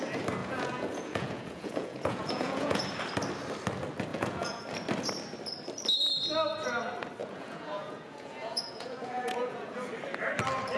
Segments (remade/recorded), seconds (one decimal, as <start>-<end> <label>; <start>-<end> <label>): 0.0-0.4 recorded; 0.4-2.8 remade; 2.8-4.1 recorded; 4.1-4.6 remade; 4.6-7.2 recorded; 7.2-9.9 remade; 9.9-10.8 recorded

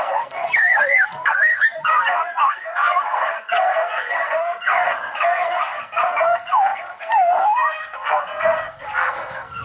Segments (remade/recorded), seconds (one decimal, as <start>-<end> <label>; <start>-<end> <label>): 0.0-9.6 remade

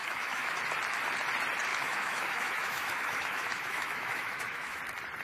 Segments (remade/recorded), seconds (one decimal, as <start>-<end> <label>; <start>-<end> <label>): 0.0-0.6 remade; 0.6-1.7 recorded; 1.7-4.8 remade; 4.8-5.2 recorded

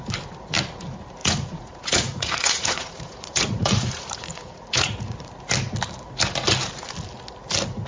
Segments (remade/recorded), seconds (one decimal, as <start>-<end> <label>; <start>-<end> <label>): 0.0-1.2 recorded; 1.2-5.3 remade; 5.3-7.9 recorded

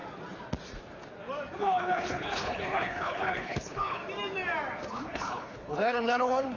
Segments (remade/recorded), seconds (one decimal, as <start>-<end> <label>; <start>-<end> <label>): 0.0-1.6 recorded; 1.6-4.0 remade; 4.0-4.9 recorded; 4.9-6.6 remade

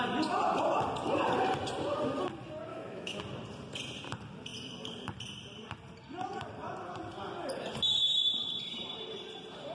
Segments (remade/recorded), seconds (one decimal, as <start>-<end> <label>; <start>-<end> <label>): 0.0-2.7 recorded; 2.7-3.2 remade; 3.2-9.7 recorded

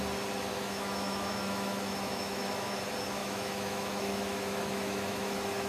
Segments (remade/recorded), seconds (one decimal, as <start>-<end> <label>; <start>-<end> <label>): 0.0-0.5 recorded; 0.5-2.8 remade; 2.8-3.2 recorded; 3.2-5.7 remade

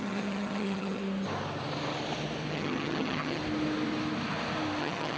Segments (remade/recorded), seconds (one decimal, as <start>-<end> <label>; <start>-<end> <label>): 0.0-1.0 remade; 1.0-2.5 recorded; 2.5-3.4 remade; 3.4-4.8 recorded; 4.8-5.2 remade